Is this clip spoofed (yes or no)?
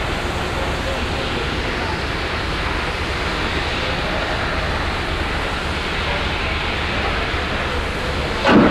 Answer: no